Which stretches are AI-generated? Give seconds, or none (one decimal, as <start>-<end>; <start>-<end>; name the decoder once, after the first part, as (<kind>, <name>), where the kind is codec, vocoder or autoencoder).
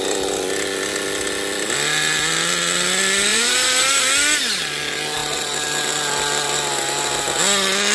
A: 3.3-4.0 (vocoder, BigVGAN v2)